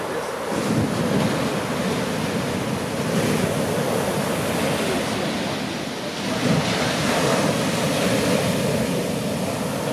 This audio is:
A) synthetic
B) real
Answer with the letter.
B